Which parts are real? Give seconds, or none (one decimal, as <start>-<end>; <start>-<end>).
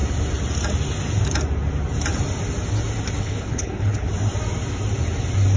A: 0.0-3.2; 4.1-5.6